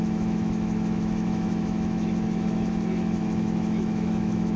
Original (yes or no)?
no